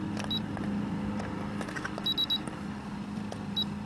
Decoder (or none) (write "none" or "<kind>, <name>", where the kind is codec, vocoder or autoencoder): none